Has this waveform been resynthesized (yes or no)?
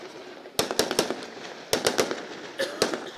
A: no